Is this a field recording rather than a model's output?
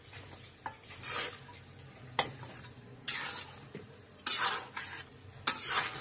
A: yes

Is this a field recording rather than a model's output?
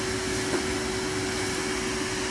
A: yes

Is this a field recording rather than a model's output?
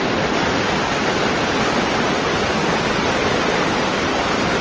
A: yes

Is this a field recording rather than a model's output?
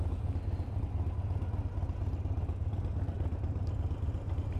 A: yes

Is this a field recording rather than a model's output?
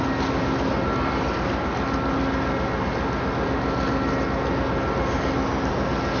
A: yes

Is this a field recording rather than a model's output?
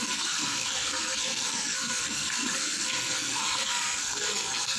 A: no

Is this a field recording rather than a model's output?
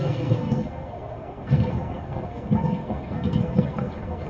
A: no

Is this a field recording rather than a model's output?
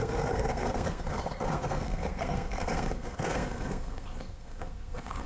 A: no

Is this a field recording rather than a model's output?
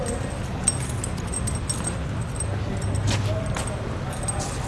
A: yes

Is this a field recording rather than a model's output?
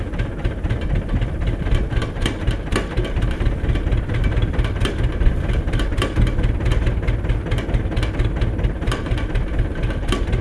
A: yes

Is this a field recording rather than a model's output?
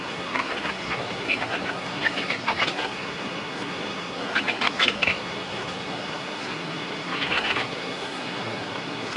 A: no